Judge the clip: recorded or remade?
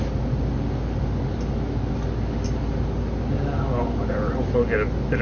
recorded